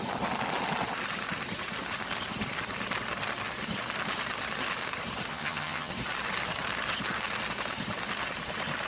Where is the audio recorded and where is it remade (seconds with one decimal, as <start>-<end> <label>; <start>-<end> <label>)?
0.0-5.3 recorded; 5.3-5.9 remade; 5.9-8.9 recorded